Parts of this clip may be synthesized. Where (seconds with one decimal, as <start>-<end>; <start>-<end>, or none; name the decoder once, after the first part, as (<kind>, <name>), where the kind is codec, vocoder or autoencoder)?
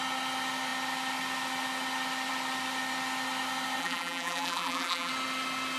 3.8-5.1 (vocoder, BigVGAN v2)